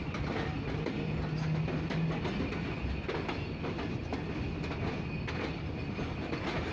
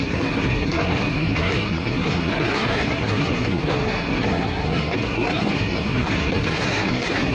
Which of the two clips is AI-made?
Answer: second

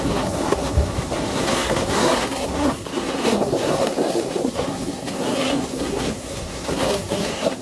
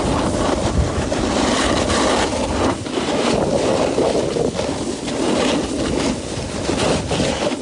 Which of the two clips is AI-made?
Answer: first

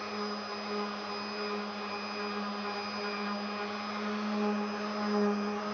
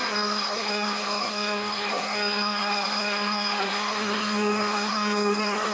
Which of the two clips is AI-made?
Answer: second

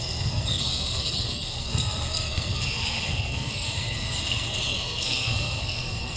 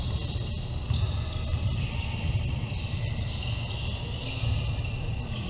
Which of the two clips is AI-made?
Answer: first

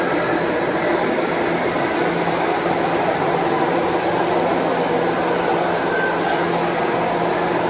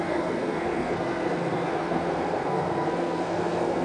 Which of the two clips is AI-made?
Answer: second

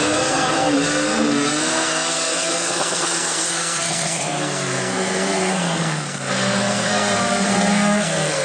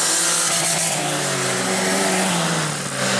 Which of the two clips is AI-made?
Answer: first